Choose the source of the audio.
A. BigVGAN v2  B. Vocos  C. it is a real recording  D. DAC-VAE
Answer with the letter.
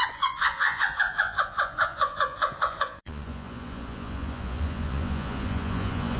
B